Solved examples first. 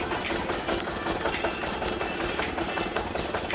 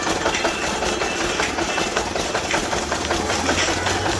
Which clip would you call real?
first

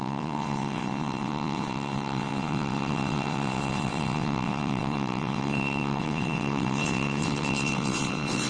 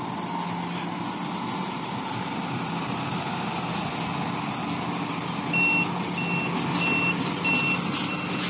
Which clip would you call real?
second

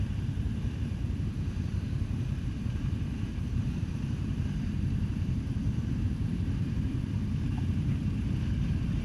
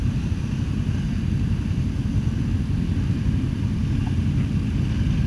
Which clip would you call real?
second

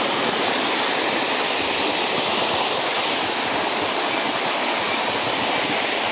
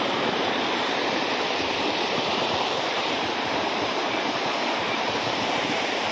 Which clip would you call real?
first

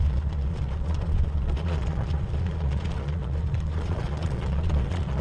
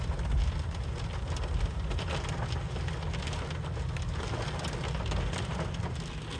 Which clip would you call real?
second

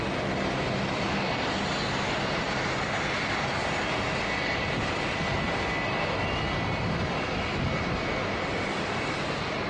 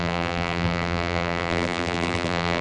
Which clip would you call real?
first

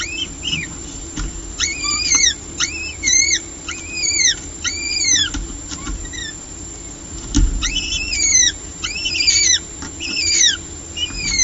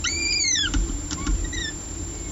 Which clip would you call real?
second